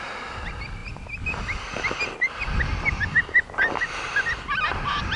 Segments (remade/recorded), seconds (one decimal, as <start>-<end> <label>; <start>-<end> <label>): 0.0-5.2 recorded